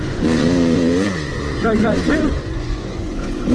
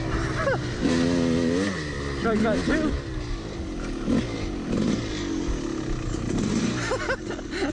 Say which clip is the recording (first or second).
second